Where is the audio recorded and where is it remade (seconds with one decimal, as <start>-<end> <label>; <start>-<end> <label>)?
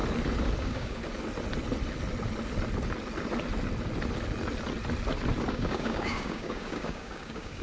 0.0-0.6 recorded; 0.6-1.0 remade; 1.0-5.5 recorded; 5.5-7.6 remade